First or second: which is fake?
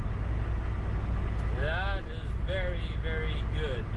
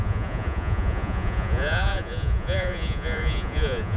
second